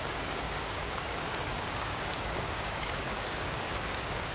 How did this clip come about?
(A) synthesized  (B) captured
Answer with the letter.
A